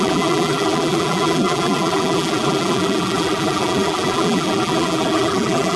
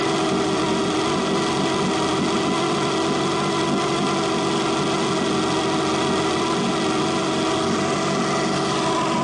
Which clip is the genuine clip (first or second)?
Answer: second